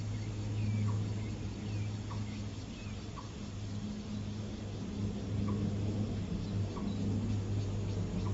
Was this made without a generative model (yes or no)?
yes